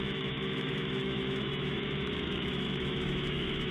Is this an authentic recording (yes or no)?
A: no